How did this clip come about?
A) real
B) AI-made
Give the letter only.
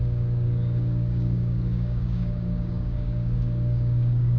B